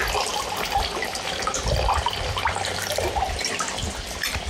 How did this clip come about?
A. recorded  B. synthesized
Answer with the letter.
A